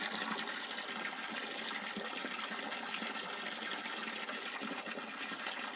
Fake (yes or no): no